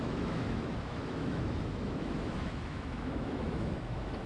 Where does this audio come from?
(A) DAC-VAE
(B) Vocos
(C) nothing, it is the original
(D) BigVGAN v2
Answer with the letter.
A